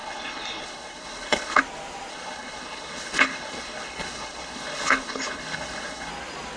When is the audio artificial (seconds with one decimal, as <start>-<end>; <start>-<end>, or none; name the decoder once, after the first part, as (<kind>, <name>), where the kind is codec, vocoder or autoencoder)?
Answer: 0.0-1.6 (codec, HILCodec); 2.1-6.1